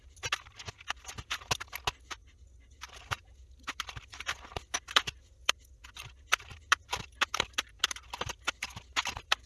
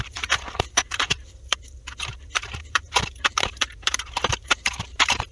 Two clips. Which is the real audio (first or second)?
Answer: first